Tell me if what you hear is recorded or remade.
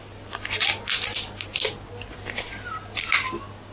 recorded